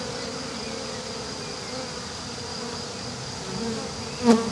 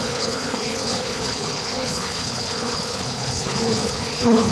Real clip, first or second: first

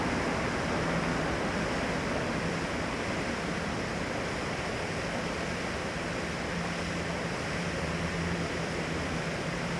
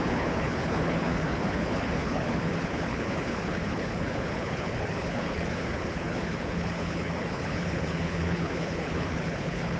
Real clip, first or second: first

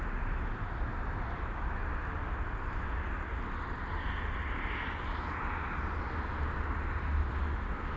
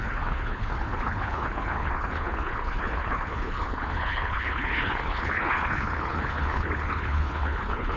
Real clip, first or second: first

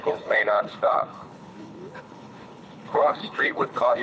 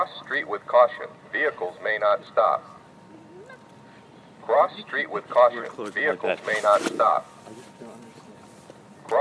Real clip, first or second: second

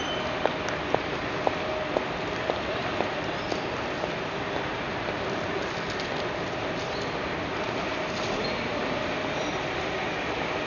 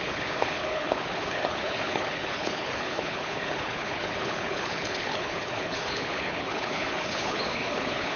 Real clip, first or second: first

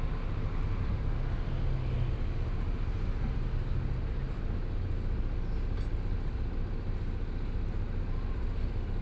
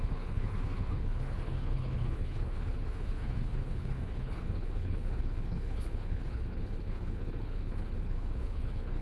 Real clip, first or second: first